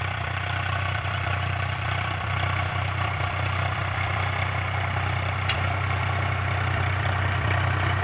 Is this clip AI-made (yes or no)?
yes